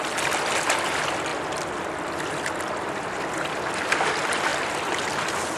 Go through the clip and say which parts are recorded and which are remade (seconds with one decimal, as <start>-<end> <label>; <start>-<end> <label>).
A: 0.0-4.5 remade; 4.5-5.6 recorded